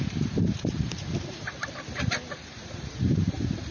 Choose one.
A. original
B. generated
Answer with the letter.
B